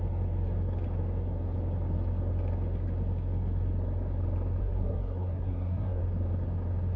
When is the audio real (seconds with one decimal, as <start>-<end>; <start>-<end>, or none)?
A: 0.0-4.6; 6.0-7.0